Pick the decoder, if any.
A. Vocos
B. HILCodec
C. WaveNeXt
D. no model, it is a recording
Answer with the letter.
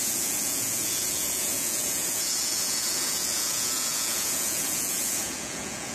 A